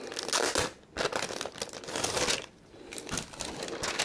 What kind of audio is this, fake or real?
real